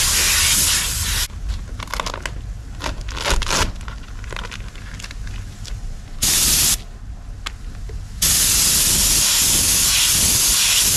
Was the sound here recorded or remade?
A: recorded